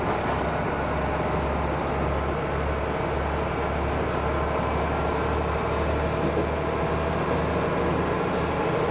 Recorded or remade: recorded